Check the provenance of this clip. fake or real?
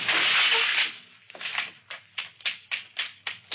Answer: real